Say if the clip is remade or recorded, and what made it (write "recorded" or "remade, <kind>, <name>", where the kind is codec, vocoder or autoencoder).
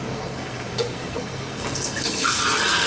remade, codec, SNAC